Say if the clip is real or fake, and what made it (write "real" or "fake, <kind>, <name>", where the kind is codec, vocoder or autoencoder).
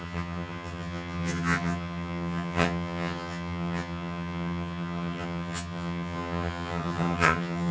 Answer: fake, vocoder, HiFi-GAN